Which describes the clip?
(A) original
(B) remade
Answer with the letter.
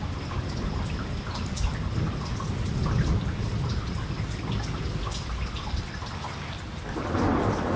A